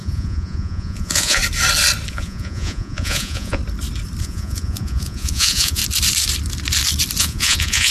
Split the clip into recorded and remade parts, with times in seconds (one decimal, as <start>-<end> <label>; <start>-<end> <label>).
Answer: 0.0-1.4 remade; 1.4-2.1 recorded; 2.1-3.6 remade; 3.6-4.2 recorded; 4.2-5.8 remade; 5.8-7.2 recorded; 7.2-7.9 remade